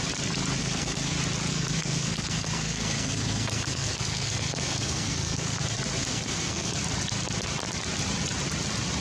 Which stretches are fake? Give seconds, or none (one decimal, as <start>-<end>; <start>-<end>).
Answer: 0.6-1.1; 1.5-5.6; 6.0-6.8